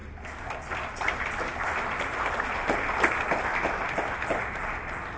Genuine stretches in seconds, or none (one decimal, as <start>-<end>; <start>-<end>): 0.0-5.2

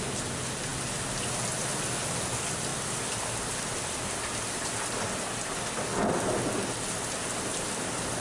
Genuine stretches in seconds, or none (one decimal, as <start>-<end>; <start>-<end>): 0.0-8.2

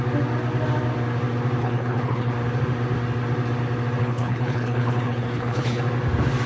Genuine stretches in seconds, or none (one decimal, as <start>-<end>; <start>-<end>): 0.0-1.6; 2.3-4.0; 5.8-6.5

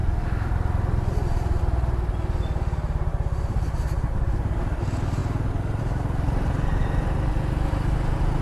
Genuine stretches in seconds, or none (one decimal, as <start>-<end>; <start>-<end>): 1.6-8.4

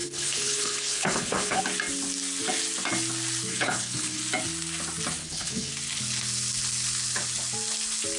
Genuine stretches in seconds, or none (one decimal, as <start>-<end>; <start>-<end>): 1.6-3.5; 4.2-5.2; 5.7-8.2